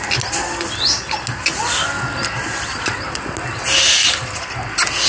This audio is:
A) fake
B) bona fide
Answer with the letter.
B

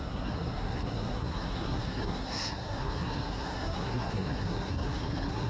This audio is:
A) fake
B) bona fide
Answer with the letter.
A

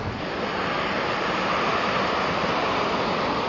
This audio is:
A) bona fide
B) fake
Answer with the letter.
A